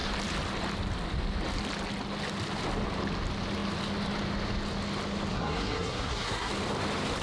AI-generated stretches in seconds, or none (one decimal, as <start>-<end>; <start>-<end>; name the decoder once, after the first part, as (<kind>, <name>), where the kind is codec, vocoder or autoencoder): 5.3-6.5 (codec, SNAC)